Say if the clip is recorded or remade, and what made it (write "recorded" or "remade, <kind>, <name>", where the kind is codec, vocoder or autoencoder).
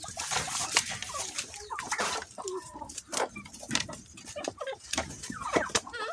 remade, vocoder, BigVGAN v2